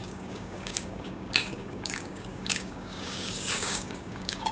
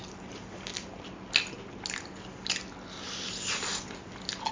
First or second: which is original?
second